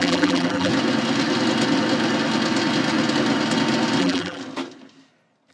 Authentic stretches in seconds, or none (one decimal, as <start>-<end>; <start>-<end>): 0.7-4.0; 4.4-5.5